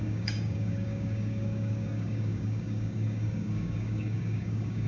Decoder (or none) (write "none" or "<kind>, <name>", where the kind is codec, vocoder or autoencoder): codec, DAC